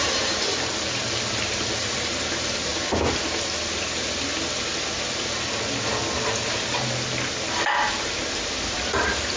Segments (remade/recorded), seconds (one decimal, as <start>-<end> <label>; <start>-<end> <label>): 0.0-0.5 remade; 0.5-1.7 recorded; 1.7-2.7 remade; 2.7-7.8 recorded; 7.8-9.4 remade